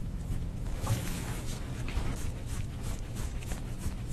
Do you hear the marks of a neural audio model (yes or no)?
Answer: yes